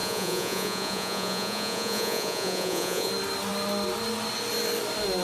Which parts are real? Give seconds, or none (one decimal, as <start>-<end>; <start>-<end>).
3.1-5.2